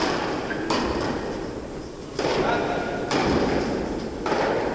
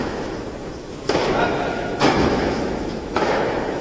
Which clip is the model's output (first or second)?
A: second